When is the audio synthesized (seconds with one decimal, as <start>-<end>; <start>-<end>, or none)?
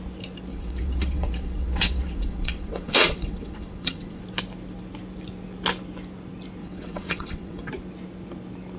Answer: 0.5-4.2; 6.6-7.7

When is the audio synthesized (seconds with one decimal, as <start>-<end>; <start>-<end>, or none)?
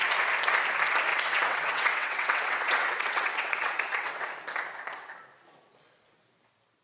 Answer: 1.1-4.2